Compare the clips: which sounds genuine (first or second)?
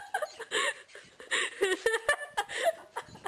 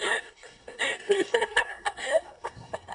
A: first